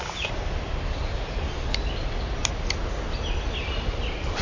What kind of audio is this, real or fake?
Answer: real